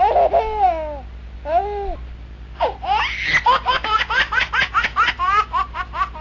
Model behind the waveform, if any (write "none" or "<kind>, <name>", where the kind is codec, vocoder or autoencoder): none